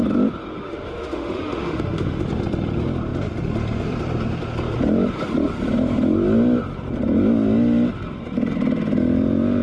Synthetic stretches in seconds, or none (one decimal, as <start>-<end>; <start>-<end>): 0.6-2.2